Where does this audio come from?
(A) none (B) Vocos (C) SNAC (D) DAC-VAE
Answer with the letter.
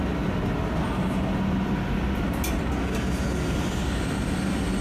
A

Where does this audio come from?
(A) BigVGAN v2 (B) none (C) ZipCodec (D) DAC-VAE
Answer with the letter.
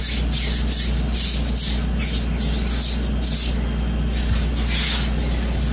B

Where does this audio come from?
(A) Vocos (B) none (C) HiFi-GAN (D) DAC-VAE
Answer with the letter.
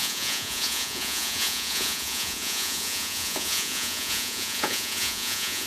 A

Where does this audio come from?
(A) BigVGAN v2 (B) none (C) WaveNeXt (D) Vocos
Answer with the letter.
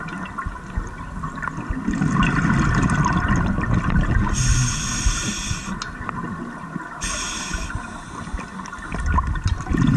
B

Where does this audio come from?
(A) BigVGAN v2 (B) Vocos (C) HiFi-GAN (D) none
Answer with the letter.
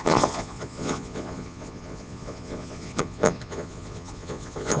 B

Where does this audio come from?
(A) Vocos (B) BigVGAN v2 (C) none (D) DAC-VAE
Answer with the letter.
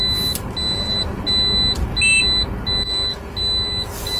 C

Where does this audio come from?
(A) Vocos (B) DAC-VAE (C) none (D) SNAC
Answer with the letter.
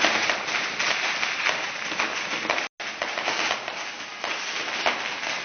C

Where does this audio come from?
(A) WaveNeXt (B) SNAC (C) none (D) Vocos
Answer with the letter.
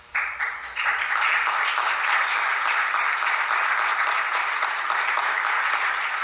C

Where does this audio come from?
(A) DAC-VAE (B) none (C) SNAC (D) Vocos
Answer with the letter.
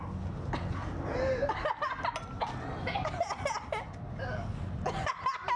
B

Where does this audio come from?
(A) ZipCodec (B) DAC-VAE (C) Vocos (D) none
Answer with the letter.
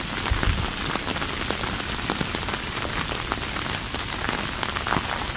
D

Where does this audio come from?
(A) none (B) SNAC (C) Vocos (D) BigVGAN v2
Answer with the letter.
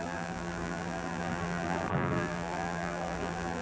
D